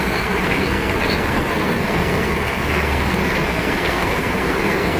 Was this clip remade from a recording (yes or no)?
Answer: yes